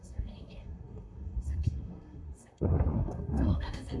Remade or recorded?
remade